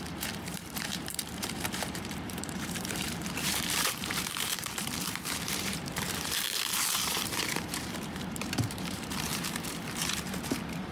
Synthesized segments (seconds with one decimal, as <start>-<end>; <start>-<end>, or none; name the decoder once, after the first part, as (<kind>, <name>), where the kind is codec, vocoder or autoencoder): 0.0-10.9 (vocoder, BigVGAN v2)